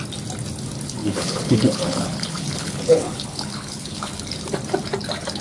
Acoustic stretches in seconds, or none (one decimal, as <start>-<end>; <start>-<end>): 0.0-1.0; 4.2-5.4